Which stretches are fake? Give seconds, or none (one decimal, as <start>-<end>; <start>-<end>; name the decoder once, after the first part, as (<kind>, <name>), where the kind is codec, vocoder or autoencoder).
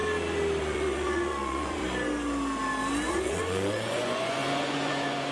0.6-1.8 (vocoder, Vocos); 3.1-5.3